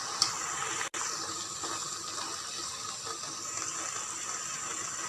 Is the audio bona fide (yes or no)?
yes